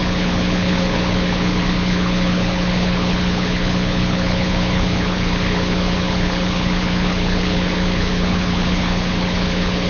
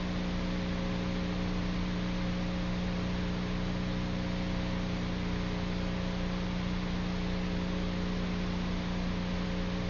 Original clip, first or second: second